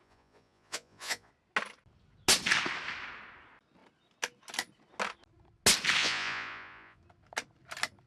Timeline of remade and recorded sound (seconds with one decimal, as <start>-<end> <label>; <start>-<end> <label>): 0.0-1.3 remade; 1.3-6.0 recorded; 6.0-7.0 remade; 7.0-8.1 recorded